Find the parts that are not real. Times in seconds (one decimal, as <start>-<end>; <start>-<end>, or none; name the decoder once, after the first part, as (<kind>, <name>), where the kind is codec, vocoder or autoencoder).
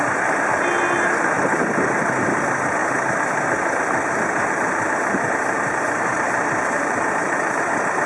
2.8-7.6 (vocoder, BigVGAN v2)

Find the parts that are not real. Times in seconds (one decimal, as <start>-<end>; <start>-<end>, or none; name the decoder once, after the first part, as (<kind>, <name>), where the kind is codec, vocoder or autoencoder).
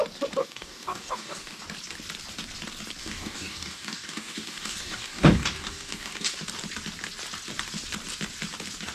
0.4-1.6 (codec, DAC); 3.0-6.4